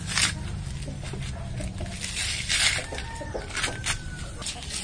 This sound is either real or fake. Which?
real